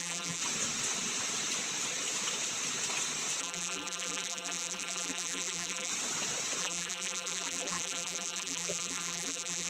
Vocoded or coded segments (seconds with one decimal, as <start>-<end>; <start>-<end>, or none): 0.0-0.4; 3.4-5.9; 6.6-9.7